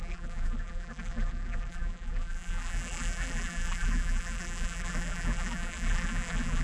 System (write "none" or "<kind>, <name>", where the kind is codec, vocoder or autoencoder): vocoder, BigVGAN v2